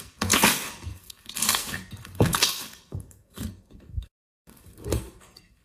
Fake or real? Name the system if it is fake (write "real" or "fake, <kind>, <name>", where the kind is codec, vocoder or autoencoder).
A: fake, codec, SNAC